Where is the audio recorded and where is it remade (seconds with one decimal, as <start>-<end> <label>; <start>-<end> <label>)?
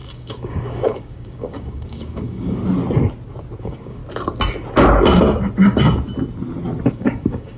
0.0-2.6 remade; 2.6-3.6 recorded; 3.6-4.0 remade; 4.0-6.9 recorded; 6.9-7.6 remade